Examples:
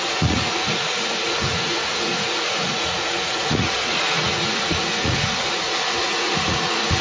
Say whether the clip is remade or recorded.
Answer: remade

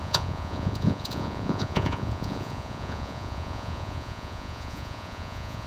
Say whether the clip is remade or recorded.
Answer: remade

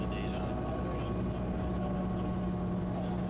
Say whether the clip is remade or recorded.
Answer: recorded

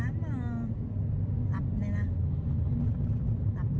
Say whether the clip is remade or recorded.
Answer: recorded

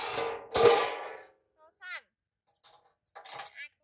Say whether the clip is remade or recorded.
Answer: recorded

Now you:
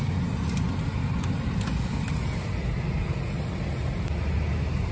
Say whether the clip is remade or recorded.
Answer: recorded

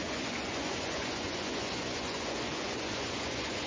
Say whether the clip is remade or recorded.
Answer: remade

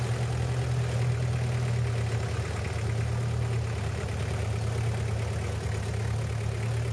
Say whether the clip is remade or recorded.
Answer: recorded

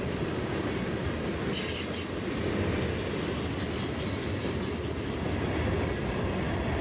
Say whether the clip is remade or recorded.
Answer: recorded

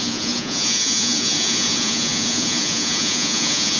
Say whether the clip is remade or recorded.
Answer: remade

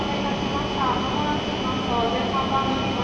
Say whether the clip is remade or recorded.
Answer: recorded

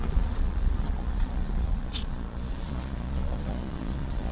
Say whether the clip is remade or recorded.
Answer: remade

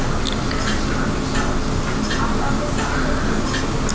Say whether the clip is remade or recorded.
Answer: recorded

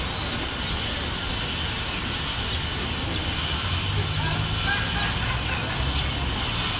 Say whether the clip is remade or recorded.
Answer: recorded